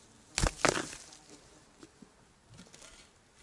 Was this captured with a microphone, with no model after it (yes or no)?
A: yes